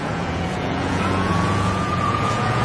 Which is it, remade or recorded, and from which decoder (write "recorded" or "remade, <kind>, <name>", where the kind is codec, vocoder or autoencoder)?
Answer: remade, vocoder, Vocos